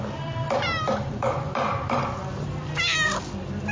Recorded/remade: remade